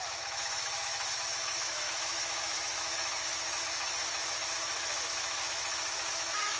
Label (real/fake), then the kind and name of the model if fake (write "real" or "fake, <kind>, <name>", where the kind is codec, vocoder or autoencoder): fake, autoencoder, DAC-VAE